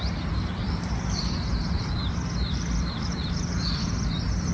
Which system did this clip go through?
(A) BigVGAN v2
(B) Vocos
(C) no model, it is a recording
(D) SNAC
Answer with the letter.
A